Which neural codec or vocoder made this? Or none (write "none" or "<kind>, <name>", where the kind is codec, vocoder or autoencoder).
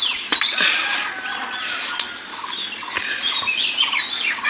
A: none